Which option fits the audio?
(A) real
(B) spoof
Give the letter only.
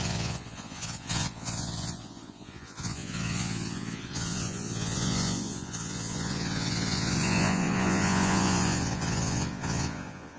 B